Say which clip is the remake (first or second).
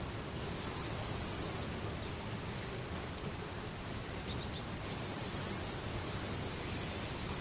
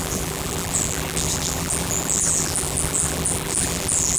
second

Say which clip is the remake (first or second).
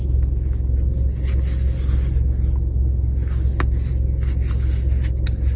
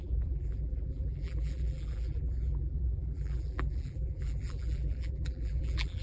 second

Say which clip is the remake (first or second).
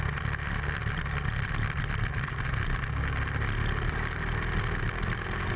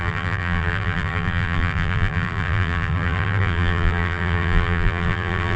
second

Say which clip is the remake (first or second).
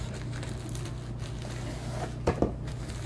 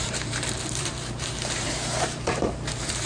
second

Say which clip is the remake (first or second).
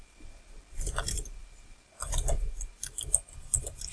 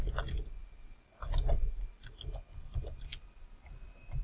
first